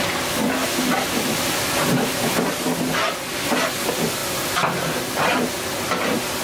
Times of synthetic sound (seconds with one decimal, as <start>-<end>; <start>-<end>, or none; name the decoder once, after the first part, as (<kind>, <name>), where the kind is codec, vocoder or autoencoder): none